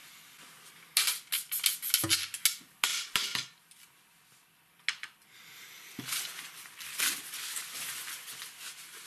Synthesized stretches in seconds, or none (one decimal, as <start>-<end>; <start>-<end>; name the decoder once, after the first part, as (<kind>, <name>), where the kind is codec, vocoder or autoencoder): none